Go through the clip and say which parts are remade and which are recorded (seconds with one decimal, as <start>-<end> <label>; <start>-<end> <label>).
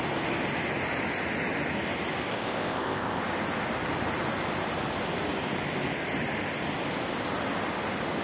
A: 0.0-2.3 recorded; 2.3-3.2 remade; 3.2-8.2 recorded